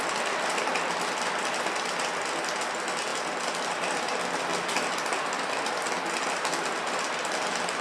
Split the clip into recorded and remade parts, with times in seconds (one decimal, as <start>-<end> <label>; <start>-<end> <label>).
0.0-7.8 recorded